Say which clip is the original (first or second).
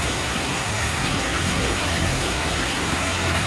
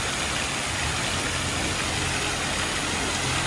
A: second